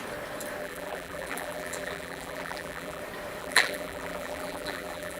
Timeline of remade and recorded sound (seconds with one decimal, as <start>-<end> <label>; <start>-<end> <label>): 0.0-0.6 recorded; 0.6-3.0 remade; 3.0-3.4 recorded; 3.4-5.2 remade